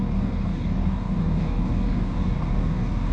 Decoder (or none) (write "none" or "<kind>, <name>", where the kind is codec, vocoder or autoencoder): codec, DAC